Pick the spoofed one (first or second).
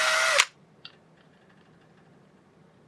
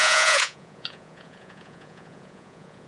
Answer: second